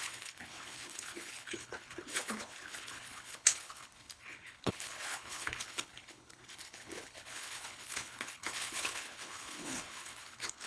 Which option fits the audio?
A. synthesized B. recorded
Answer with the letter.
A